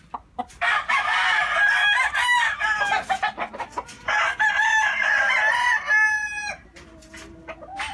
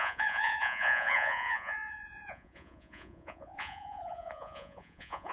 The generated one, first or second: second